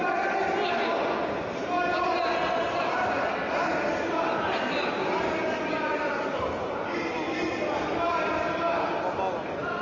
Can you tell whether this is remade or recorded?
recorded